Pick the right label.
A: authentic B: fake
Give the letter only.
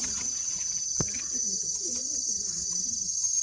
B